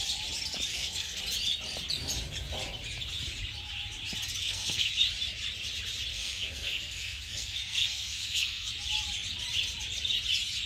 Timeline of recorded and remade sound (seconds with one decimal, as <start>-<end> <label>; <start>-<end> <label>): 0.0-0.7 recorded; 0.7-1.2 remade; 1.2-4.4 recorded; 4.4-4.9 remade; 4.9-6.1 recorded; 6.1-8.7 remade; 8.7-10.7 recorded